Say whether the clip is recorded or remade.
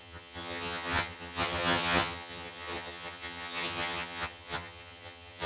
remade